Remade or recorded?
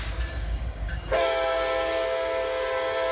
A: remade